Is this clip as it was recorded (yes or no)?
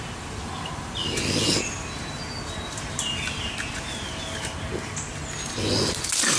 yes